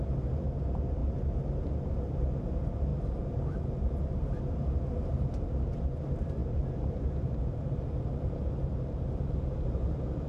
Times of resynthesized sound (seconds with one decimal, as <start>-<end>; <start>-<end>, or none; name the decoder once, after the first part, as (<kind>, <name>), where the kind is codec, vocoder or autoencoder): 2.9-4.0 (vocoder, BigVGAN v2); 5.1-5.7; 6.4-9.9